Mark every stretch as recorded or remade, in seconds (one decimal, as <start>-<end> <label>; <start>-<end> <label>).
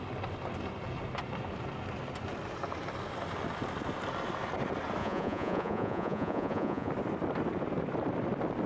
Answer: 0.0-5.0 recorded; 5.0-6.9 remade; 6.9-8.7 recorded